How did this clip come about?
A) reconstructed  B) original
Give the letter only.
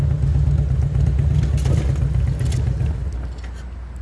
B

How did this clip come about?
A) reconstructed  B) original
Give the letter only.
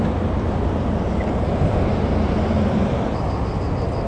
B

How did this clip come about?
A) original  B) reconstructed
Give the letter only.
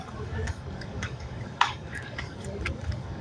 B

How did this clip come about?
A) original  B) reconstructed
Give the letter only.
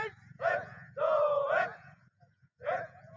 B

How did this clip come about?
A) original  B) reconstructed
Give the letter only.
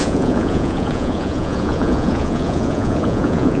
B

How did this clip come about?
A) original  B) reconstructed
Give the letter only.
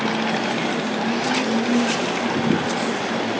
A